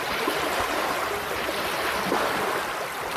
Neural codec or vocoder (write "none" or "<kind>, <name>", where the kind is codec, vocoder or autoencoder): none